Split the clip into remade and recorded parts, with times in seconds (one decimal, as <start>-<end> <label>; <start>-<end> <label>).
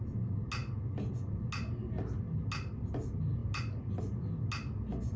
0.0-5.2 recorded